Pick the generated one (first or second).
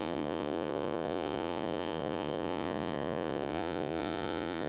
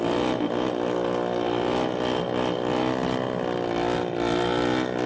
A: first